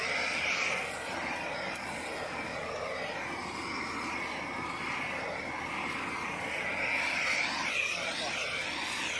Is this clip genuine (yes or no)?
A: yes